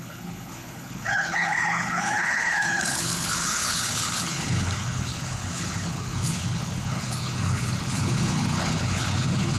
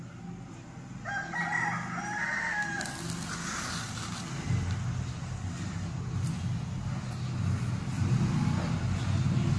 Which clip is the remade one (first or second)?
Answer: first